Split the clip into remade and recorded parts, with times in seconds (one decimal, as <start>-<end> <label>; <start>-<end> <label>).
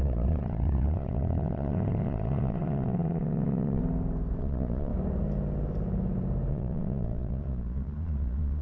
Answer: 0.0-3.8 remade; 3.8-4.4 recorded; 4.4-4.9 remade; 4.9-6.5 recorded; 6.5-8.6 remade